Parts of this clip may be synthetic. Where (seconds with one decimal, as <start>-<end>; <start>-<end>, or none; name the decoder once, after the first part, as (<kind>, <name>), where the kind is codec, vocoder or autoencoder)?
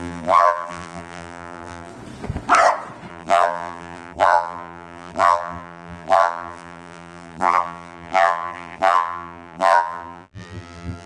0.0-1.9 (vocoder, BigVGAN v2); 3.1-11.1